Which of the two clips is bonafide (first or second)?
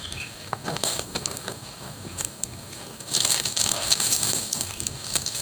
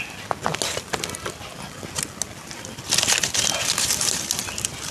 second